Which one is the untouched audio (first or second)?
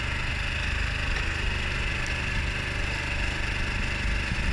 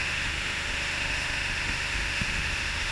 first